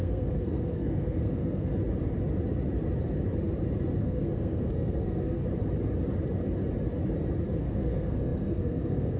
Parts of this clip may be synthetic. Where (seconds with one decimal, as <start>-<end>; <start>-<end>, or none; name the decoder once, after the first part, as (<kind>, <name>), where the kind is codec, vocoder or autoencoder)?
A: 0.0-1.7 (codec, SNAC); 4.0-5.4; 7.6-9.2